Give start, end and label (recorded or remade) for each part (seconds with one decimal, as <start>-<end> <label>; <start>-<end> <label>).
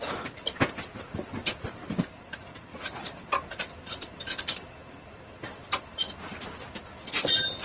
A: 0.0-7.6 recorded